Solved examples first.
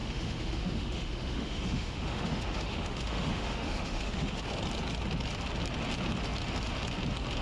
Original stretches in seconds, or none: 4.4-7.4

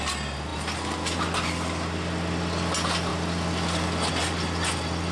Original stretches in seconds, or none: 0.0-5.1

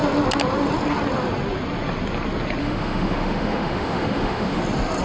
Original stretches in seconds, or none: 0.0-2.6; 4.6-5.0

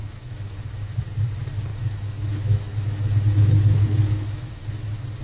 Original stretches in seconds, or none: 1.0-1.7; 4.7-5.2

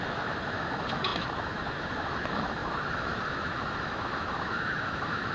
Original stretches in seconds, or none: none

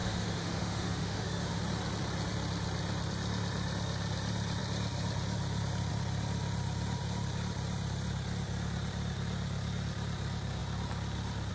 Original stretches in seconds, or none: 1.6-11.5

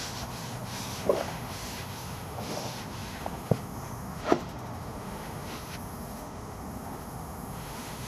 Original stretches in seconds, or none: none

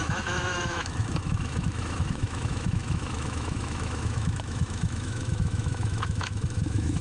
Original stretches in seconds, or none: none